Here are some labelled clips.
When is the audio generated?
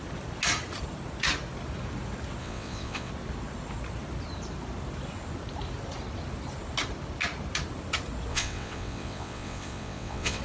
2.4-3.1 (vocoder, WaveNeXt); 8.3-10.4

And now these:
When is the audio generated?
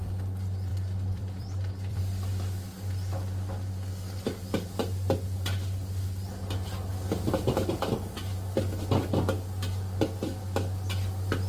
0.7-2.0 (vocoder, BigVGAN v2)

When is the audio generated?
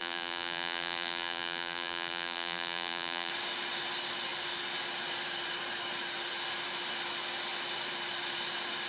0.0-3.3 (vocoder, BigVGAN v2)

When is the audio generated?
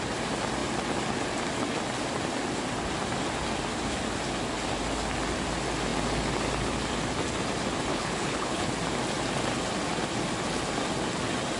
7.9-8.7 (codec, HILCodec)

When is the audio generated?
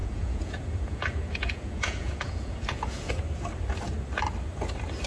0.0-3.1 (vocoder, Vocos)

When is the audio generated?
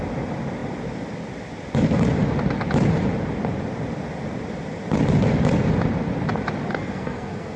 6.7-7.6 (codec, SNAC)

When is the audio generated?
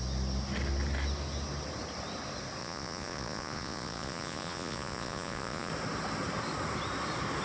2.6-5.7 (vocoder, Vocos)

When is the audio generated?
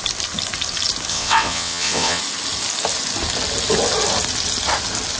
1.1-2.2 (vocoder, WaveNeXt)